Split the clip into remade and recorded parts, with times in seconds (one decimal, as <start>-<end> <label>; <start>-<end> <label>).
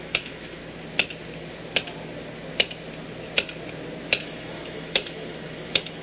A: 0.0-0.6 remade; 0.6-4.2 recorded; 4.2-6.0 remade